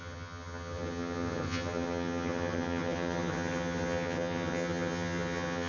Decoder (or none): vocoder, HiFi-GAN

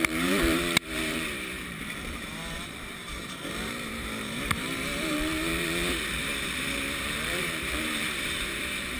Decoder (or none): vocoder, BigVGAN v2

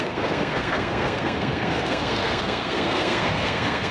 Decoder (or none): codec, SNAC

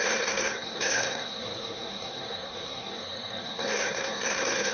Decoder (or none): codec, SNAC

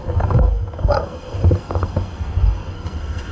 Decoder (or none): codec, SNAC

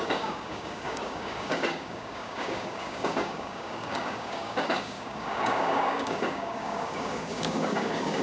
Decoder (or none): codec, DAC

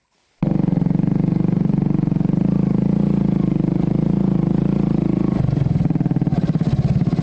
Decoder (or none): none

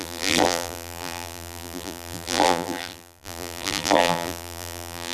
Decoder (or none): vocoder, BigVGAN v2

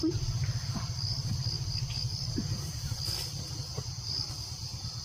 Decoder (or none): none